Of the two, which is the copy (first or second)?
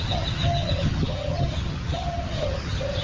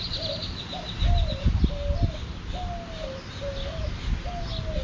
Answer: first